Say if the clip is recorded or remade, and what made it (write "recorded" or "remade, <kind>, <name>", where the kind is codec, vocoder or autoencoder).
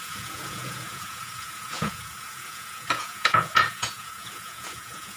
remade, vocoder, Vocos